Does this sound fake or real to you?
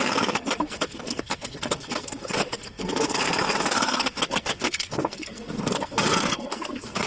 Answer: fake